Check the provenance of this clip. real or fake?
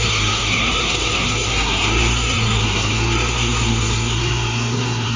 fake